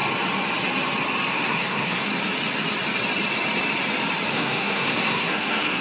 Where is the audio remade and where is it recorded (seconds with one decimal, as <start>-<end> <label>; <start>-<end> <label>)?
0.0-1.3 recorded; 1.3-2.1 remade; 2.1-4.3 recorded; 4.3-5.8 remade